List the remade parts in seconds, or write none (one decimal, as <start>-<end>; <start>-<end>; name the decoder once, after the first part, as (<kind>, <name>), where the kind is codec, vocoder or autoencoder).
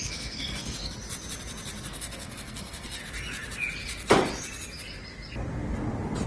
0.0-1.0 (codec, SNAC); 1.9-3.0